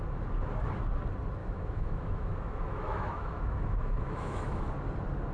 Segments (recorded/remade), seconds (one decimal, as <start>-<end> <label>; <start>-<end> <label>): 0.0-1.4 recorded; 1.4-4.6 remade; 4.6-5.3 recorded